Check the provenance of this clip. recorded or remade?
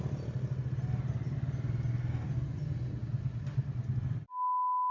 recorded